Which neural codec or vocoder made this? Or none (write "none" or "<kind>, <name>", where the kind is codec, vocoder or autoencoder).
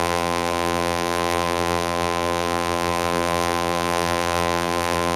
vocoder, BigVGAN v2